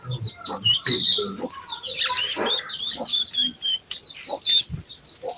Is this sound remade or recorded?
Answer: recorded